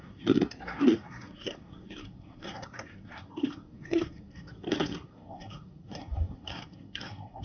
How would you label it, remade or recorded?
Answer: remade